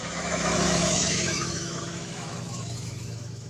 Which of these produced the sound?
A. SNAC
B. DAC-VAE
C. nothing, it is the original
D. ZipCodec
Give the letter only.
B